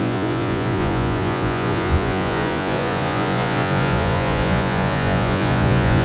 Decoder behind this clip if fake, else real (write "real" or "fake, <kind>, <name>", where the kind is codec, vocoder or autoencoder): fake, vocoder, Vocos